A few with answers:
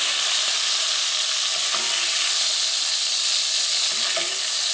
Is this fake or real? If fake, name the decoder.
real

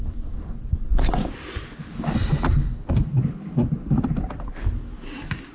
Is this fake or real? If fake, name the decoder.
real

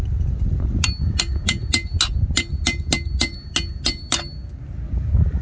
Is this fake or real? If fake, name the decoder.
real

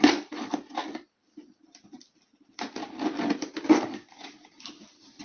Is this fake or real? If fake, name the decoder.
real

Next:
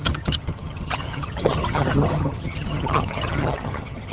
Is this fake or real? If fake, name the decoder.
fake, vocoder, HiFi-GAN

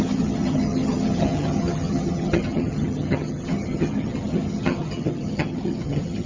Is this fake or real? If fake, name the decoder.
fake, vocoder, HiFi-GAN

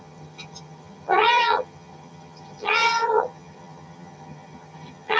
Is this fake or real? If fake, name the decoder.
fake, vocoder, HiFi-GAN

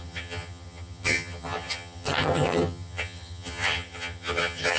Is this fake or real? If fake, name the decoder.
fake, vocoder, HiFi-GAN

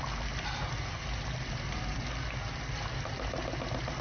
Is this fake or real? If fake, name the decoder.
real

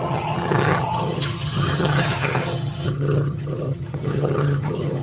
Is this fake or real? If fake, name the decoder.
fake, vocoder, HiFi-GAN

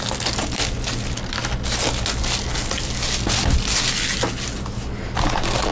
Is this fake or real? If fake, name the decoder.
real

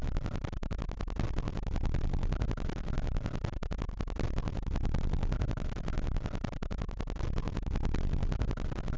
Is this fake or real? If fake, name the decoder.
real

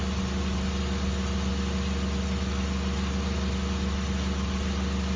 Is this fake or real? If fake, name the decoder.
real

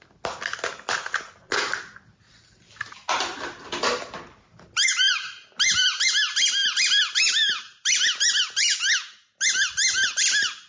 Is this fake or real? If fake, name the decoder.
real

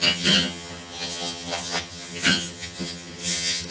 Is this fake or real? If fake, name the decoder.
fake, vocoder, HiFi-GAN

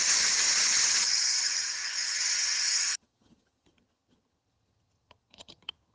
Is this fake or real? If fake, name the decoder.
fake, vocoder, HiFi-GAN